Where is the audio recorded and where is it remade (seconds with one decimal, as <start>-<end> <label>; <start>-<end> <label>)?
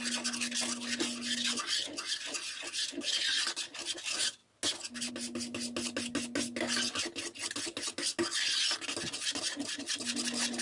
0.0-10.6 recorded